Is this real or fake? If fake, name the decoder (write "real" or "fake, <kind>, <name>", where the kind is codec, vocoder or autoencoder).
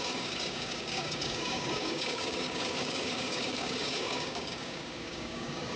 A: fake, codec, DAC